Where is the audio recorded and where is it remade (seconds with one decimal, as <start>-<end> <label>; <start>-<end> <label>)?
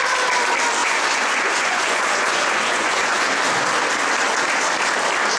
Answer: 0.0-0.8 recorded; 0.8-3.3 remade; 3.3-5.4 recorded